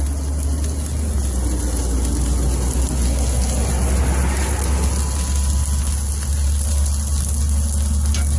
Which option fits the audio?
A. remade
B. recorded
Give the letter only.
B